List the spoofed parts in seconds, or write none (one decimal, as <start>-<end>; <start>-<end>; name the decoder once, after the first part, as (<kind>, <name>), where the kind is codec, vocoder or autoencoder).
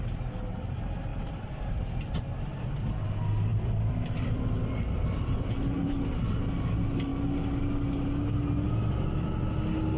1.1-2.1 (vocoder, BigVGAN v2); 3.5-6.5